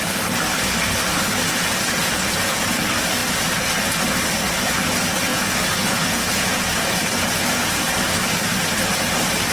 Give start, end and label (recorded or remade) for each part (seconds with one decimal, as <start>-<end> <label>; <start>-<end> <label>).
0.0-1.5 recorded; 1.5-2.6 remade; 2.6-5.3 recorded; 5.3-7.7 remade; 7.7-9.5 recorded